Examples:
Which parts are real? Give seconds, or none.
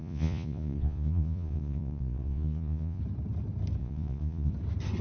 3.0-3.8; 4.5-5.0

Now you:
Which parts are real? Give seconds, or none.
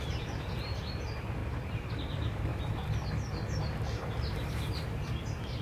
2.5-3.6